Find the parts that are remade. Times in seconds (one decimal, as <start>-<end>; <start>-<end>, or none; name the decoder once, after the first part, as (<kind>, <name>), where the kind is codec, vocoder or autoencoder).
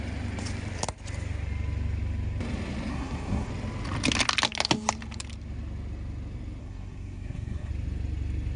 2.9-3.5 (codec, SNAC); 6.6-7.7